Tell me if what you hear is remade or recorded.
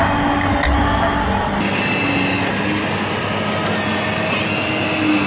recorded